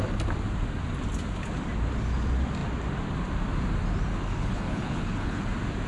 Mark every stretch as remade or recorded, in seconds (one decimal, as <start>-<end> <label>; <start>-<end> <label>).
0.0-4.3 recorded; 4.3-5.4 remade; 5.4-5.9 recorded